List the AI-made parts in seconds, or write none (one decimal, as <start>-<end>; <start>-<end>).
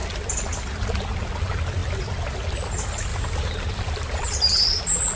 3.1-4.8